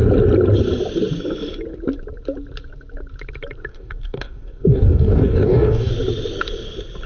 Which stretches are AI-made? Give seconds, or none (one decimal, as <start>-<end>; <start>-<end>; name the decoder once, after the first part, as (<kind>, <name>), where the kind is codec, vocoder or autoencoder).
3.7-5.9 (codec, DAC)